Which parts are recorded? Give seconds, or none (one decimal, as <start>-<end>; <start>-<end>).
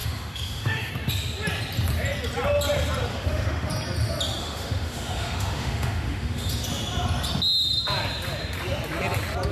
0.9-3.1; 3.7-4.4; 6.5-9.5